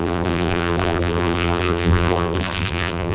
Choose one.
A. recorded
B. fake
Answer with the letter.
B